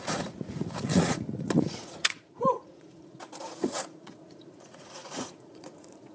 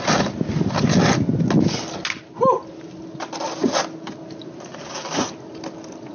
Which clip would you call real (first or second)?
second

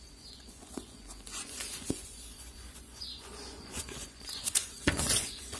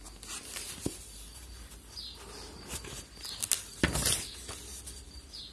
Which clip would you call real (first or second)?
second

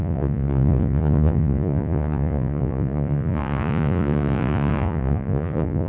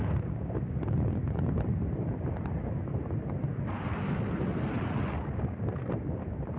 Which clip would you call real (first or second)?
second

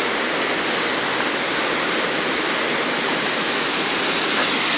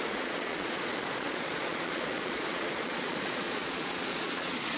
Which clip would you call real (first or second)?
first